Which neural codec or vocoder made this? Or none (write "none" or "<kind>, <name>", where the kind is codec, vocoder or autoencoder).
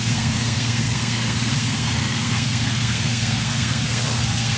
codec, SNAC